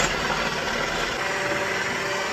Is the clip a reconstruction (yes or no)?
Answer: no